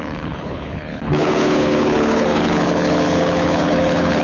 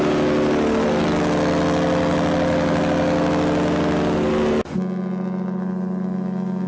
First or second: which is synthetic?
first